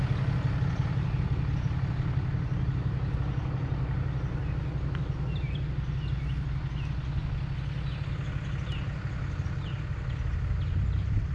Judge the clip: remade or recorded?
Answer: recorded